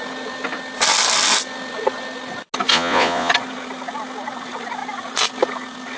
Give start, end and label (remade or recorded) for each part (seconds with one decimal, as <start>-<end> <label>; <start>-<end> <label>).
0.0-2.7 recorded; 2.7-3.3 remade; 3.3-6.0 recorded